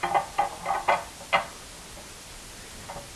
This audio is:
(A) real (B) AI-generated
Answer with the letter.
A